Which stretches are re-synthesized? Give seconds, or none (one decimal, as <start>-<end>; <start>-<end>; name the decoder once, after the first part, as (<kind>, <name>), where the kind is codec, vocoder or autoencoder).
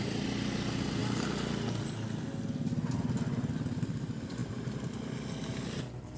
none